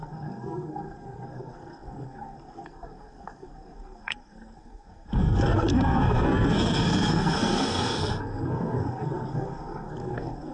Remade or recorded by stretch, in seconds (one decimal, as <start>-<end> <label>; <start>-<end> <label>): 0.0-10.5 remade